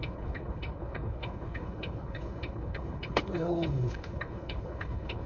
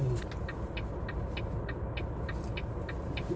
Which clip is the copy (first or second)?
first